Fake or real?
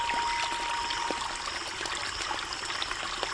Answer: real